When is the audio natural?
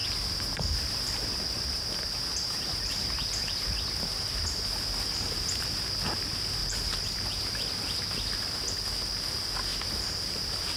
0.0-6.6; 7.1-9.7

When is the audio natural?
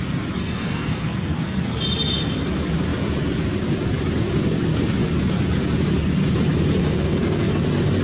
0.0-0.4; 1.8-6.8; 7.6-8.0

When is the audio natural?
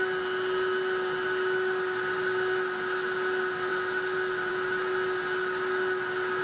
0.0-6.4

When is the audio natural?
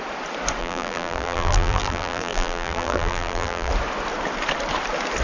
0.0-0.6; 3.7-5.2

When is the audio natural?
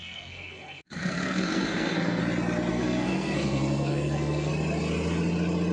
2.2-2.7; 4.5-5.7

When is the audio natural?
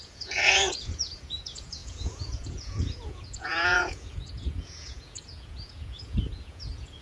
none